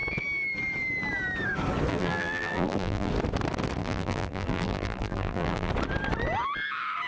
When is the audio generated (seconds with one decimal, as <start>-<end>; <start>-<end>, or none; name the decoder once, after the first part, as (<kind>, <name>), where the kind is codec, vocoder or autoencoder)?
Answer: 1.9-3.1 (vocoder, BigVGAN v2); 3.8-5.7